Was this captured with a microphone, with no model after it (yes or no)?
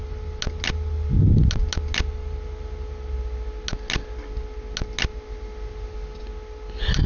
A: yes